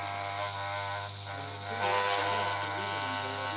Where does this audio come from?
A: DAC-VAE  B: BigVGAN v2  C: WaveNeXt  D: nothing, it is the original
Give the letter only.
D